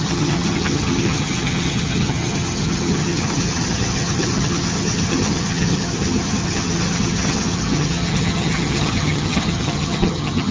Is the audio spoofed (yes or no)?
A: yes